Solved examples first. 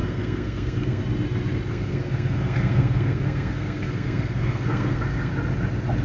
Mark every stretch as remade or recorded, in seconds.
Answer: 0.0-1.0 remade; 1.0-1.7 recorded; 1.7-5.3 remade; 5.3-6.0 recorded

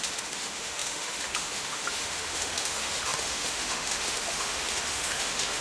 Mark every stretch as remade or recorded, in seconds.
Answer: 0.0-5.6 remade

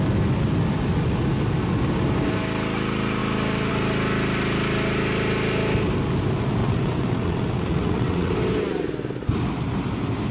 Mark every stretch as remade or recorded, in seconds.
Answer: 0.0-6.6 recorded; 6.6-8.3 remade; 8.3-10.3 recorded

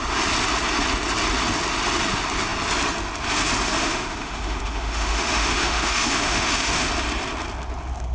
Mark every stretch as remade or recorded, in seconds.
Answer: 0.0-3.8 recorded; 3.8-6.9 remade; 6.9-8.1 recorded

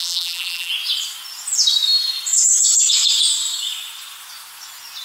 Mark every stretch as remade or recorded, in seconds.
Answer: 0.0-0.7 remade; 0.7-5.0 recorded

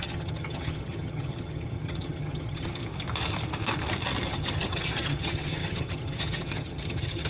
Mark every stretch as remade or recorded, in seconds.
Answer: 0.0-2.8 remade; 2.8-4.3 recorded; 4.3-7.3 remade

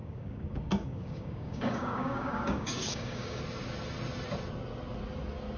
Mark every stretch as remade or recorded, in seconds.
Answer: 0.0-3.4 remade; 3.4-5.6 recorded

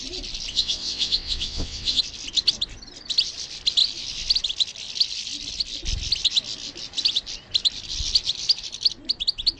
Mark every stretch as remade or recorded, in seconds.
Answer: 0.0-0.5 recorded; 0.5-2.0 remade; 2.0-9.6 recorded